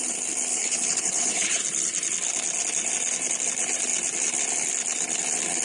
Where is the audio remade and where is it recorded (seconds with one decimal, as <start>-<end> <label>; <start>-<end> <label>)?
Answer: 0.0-0.5 recorded; 0.5-1.6 remade; 1.6-5.6 recorded